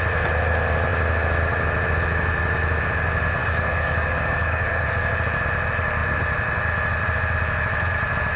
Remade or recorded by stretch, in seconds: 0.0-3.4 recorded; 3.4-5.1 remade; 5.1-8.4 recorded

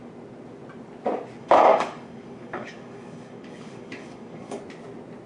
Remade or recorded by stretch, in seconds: 0.0-1.4 recorded; 1.4-4.6 remade; 4.6-5.3 recorded

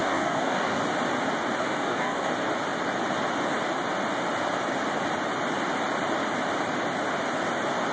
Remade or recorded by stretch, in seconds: 0.0-0.8 remade; 0.8-1.6 recorded; 1.6-2.3 remade; 2.3-7.9 recorded